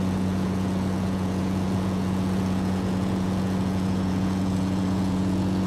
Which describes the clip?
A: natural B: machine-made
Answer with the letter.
B